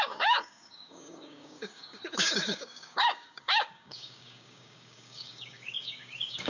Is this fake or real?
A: fake